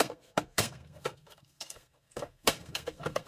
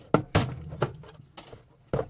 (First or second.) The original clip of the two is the second